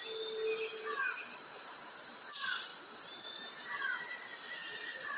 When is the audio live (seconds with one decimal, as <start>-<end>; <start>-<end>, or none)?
0.0-5.2